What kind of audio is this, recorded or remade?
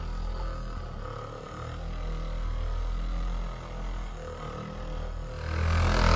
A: recorded